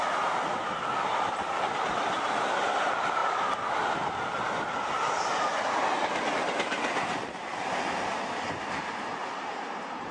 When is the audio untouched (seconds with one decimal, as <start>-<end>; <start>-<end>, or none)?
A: 0.0-9.2